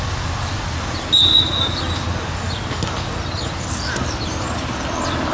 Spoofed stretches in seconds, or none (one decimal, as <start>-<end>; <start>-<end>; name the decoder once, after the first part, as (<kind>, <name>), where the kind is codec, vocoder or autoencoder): none